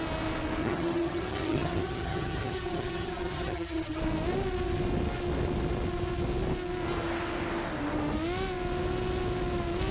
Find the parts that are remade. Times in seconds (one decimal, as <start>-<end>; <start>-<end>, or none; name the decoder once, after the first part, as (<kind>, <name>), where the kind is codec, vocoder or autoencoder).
0.6-4.0 (vocoder, HiFi-GAN)